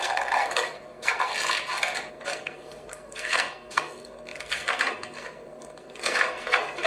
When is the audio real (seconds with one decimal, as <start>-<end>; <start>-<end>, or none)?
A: 1.3-2.1